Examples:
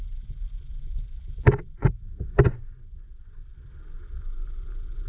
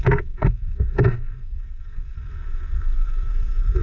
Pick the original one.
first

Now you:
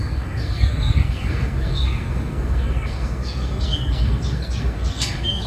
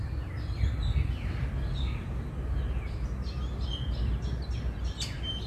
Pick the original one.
second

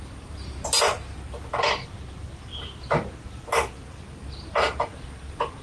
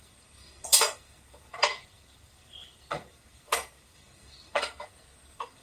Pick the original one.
first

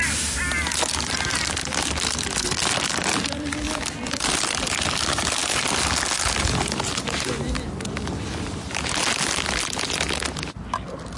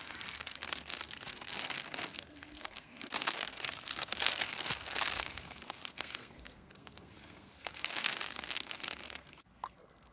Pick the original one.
first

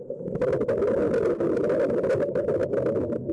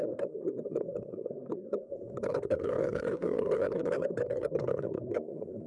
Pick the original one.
first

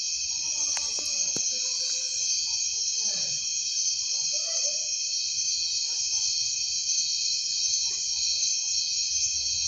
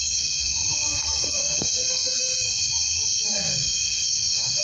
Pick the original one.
first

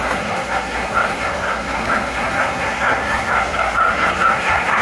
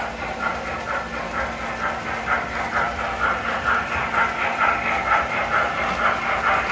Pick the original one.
second